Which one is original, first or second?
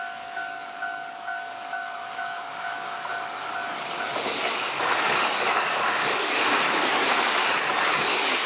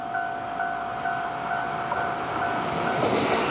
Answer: second